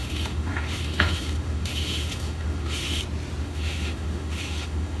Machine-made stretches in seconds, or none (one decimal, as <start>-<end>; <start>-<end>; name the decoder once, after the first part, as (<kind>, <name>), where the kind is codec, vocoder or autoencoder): 0.0-3.0 (autoencoder, DAC-VAE); 3.4-5.0